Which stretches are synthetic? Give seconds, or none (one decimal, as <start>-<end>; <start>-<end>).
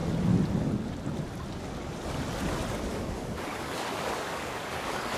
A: 2.9-5.2